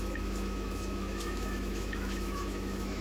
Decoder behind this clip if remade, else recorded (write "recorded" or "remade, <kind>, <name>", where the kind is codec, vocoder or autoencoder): remade, autoencoder, DAC-VAE